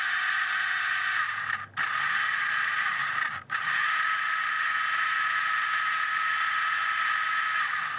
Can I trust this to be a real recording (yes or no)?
no